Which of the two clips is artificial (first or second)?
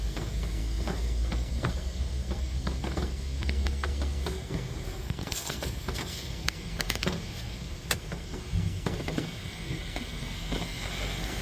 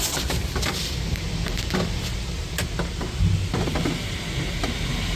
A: first